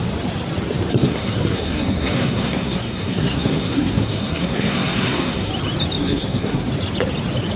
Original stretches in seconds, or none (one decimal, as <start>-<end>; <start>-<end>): 0.0-0.9; 5.5-6.0; 6.7-7.6